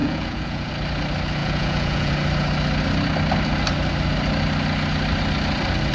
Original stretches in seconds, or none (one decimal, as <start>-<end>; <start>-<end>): 0.7-1.4; 2.1-5.9